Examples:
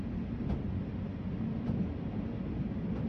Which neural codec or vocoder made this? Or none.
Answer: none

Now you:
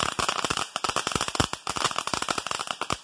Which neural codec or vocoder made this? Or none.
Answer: none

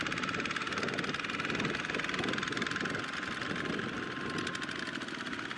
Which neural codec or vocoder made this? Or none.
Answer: none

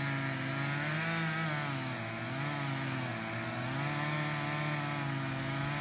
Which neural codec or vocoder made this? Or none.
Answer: none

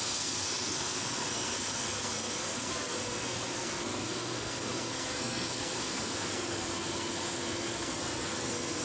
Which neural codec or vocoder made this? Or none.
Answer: codec, SNAC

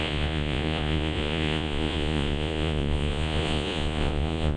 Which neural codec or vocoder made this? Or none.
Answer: vocoder, Vocos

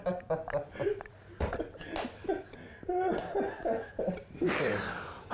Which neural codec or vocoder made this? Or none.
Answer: none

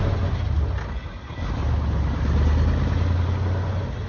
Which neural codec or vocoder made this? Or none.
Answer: none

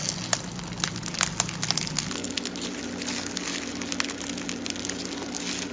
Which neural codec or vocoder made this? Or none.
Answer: none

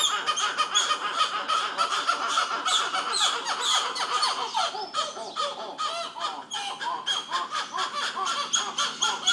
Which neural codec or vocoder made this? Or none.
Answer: none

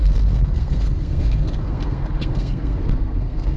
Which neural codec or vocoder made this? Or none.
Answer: codec, SNAC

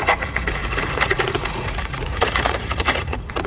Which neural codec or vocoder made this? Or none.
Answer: vocoder, Vocos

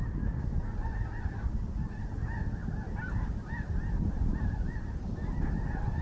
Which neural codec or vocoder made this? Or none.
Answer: none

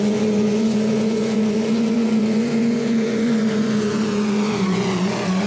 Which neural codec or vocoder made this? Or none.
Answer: vocoder, Vocos